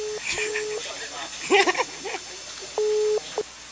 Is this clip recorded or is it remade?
recorded